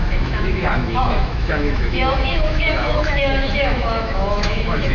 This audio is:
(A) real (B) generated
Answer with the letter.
B